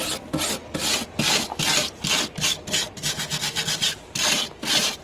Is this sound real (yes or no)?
yes